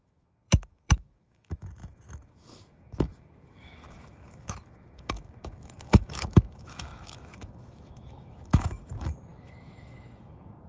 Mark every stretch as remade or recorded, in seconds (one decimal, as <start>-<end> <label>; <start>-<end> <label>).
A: 0.0-10.7 remade